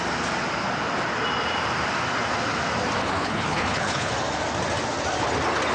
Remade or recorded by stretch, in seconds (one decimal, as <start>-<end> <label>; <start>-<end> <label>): 0.0-3.0 recorded; 3.0-4.1 remade; 4.1-5.7 recorded